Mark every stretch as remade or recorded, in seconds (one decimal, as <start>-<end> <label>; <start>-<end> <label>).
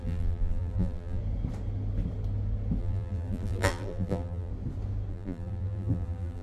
0.0-1.2 remade; 1.2-2.8 recorded; 2.8-4.5 remade; 4.5-5.1 recorded; 5.1-6.4 remade